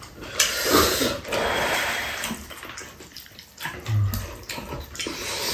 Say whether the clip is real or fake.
real